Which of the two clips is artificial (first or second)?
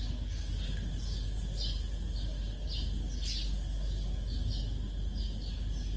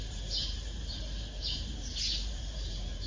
second